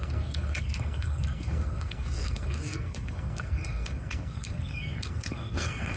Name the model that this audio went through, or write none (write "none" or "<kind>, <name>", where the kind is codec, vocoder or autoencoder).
codec, SNAC